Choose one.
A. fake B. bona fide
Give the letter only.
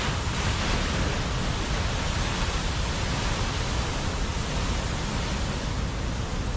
B